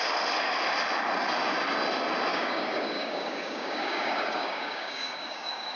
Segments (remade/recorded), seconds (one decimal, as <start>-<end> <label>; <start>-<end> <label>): 0.0-2.3 recorded; 2.3-5.8 remade